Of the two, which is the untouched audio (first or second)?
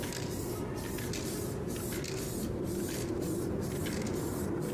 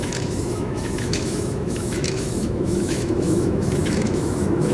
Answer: first